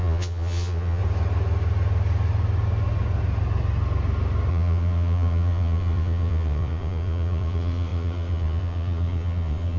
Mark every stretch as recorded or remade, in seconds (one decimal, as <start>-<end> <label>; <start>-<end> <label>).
0.0-1.0 remade; 1.0-4.5 recorded; 4.5-9.8 remade